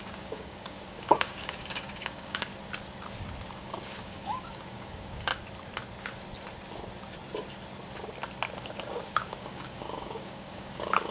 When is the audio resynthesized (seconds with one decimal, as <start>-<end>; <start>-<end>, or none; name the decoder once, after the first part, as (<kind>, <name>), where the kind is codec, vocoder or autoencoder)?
0.0-2.5 (codec, DAC); 3.5-5.3; 8.6-11.1

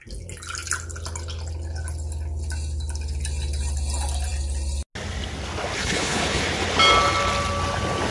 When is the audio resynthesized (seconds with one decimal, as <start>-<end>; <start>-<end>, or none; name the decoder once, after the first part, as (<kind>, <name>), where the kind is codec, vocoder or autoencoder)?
5.8-6.4 (codec, HILCodec)

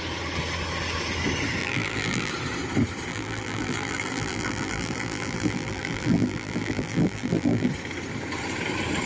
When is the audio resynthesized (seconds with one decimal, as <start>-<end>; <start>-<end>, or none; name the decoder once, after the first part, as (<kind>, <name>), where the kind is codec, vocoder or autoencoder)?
1.6-2.3 (vocoder, BigVGAN v2); 3.1-7.7

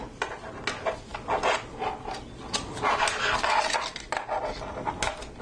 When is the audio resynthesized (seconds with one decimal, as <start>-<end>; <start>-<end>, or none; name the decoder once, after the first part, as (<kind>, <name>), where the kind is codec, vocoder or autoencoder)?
none

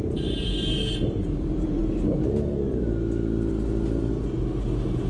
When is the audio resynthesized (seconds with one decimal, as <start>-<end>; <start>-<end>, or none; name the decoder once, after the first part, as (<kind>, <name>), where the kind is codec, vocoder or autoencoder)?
none

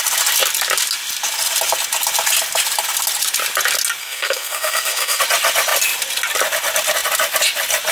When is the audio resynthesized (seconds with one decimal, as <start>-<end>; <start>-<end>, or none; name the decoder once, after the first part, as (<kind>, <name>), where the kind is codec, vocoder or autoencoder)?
4.0-5.2 (codec, SNAC)

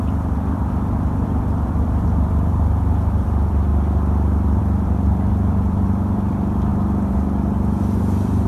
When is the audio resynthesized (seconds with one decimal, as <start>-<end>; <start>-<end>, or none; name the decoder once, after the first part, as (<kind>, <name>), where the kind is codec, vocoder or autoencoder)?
0.0-3.7 (vocoder, BigVGAN v2); 4.6-6.7; 8.0-8.5

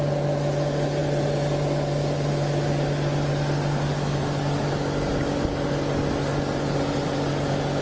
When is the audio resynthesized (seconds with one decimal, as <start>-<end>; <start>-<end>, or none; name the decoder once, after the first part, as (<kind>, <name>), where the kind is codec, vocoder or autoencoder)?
none